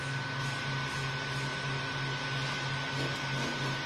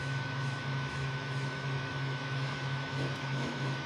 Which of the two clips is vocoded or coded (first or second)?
second